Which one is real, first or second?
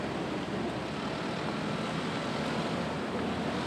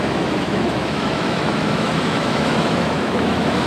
first